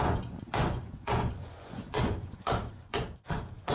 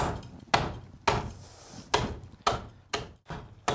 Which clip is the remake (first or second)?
first